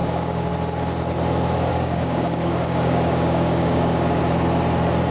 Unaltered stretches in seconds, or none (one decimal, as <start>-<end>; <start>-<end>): 0.5-1.7; 4.2-5.1